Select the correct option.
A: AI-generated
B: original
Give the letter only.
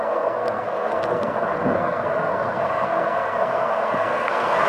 A